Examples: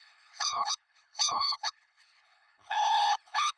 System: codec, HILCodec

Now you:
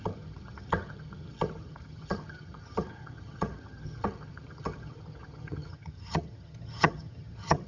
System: vocoder, HiFi-GAN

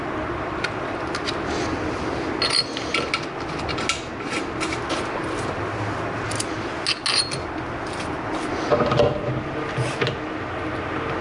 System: none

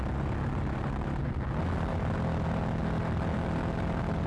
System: none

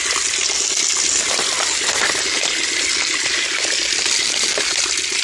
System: none